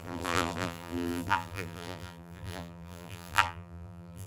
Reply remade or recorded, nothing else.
remade